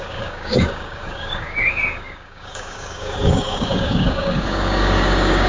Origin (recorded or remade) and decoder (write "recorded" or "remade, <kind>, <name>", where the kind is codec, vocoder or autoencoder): remade, codec, DAC